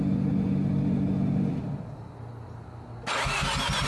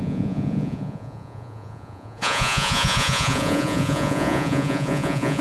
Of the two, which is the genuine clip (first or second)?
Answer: first